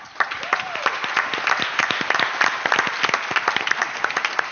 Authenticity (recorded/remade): recorded